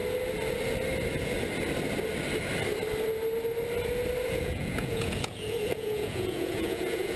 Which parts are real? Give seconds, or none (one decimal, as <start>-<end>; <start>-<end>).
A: 0.0-4.3